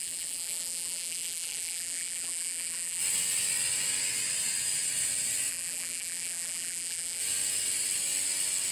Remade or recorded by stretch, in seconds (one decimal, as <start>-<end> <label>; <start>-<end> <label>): 0.0-3.0 remade; 3.0-5.5 recorded; 5.5-7.2 remade; 7.2-8.7 recorded